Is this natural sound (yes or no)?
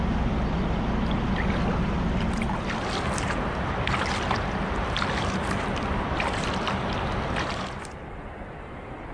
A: yes